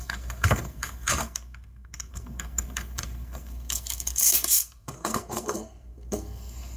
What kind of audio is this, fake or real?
fake